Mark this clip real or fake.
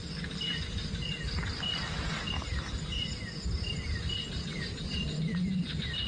real